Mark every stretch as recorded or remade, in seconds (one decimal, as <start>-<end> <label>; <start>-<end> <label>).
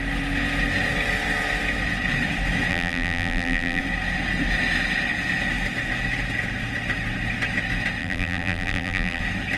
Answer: 0.0-2.7 recorded; 2.7-3.8 remade; 3.8-8.0 recorded; 8.0-9.2 remade; 9.2-9.6 recorded